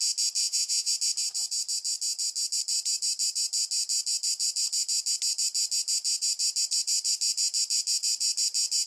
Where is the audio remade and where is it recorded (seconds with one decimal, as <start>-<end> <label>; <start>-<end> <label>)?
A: 0.0-0.4 recorded; 0.4-0.9 remade; 0.9-8.9 recorded